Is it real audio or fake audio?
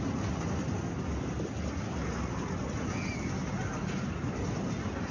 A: real